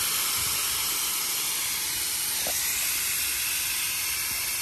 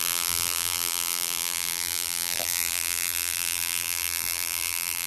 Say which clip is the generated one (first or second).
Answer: second